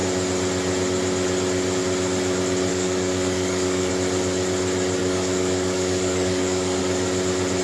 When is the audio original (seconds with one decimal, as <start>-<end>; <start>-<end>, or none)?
0.0-2.7; 3.9-5.0; 6.8-7.6